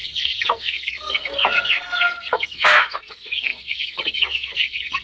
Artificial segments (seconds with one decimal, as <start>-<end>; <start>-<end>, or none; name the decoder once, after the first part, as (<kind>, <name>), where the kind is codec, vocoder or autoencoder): 0.0-5.0 (codec, SNAC)